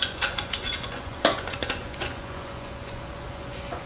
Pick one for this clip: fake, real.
fake